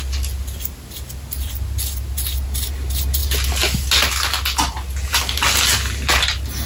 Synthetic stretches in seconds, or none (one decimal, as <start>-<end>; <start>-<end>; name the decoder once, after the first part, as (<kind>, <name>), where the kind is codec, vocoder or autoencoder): none